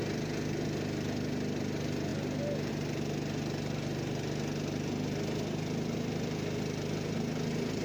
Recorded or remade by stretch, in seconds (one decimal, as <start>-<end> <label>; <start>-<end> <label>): 0.0-7.8 recorded